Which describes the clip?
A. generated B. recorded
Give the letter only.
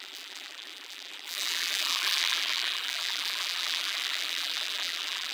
A